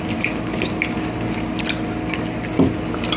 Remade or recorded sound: recorded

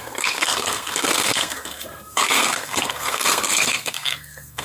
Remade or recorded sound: remade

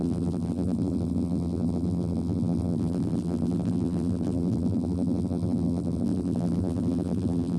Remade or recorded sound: remade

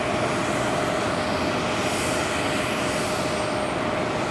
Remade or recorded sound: recorded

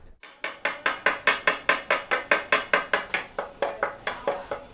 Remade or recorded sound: recorded